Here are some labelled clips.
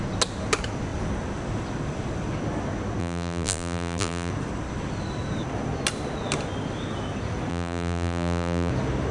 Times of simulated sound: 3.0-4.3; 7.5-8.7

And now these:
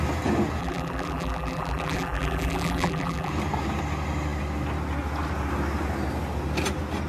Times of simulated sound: 0.6-3.3

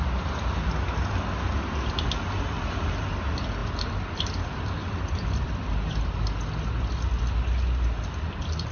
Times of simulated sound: 3.6-6.0

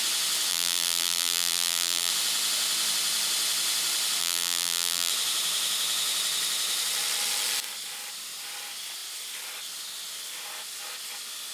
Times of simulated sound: 0.5-2.1; 4.2-5.1

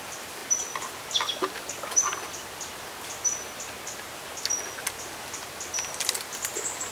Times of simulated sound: none

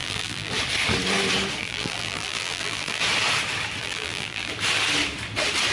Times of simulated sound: 0.0-0.5; 1.6-3.0; 3.8-4.5

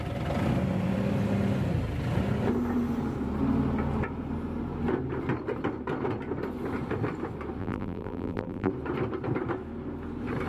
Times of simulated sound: 7.6-8.7

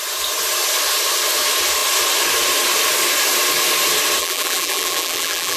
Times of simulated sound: 4.2-5.6